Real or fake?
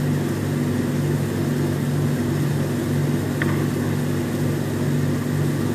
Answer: real